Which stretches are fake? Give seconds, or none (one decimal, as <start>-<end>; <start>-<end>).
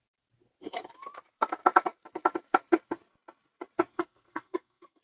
3.9-5.0